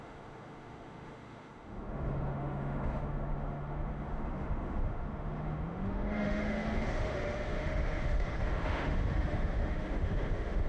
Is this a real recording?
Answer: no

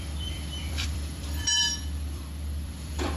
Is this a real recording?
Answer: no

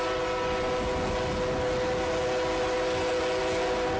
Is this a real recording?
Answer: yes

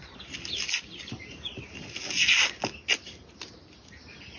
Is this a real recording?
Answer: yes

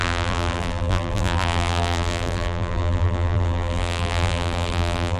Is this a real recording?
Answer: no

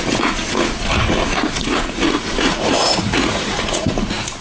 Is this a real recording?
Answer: no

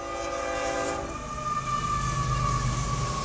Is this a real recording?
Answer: yes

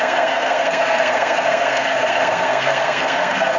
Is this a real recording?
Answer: no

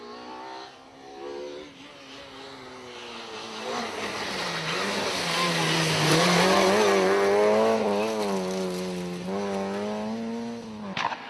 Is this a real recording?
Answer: yes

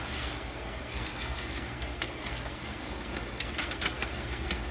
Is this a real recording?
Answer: no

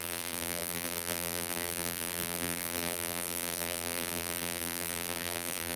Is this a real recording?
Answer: no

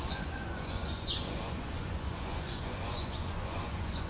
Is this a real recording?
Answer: no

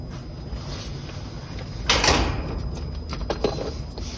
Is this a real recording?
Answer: yes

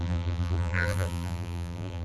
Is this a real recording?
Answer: no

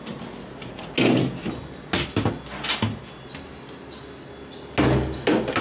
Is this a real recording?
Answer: yes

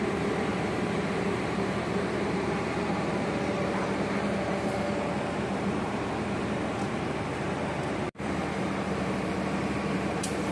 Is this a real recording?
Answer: no